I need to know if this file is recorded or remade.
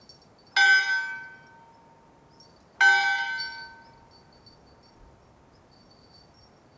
recorded